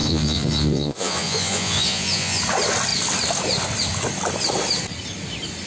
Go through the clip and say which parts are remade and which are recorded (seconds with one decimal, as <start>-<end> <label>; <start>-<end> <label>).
0.0-2.4 remade; 2.4-5.7 recorded